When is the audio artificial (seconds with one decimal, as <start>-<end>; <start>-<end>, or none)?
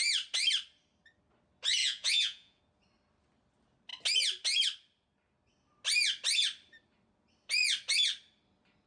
1.8-2.6